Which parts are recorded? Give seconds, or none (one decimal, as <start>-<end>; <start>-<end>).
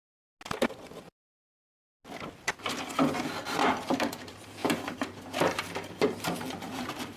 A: 0.0-1.0; 1.5-3.2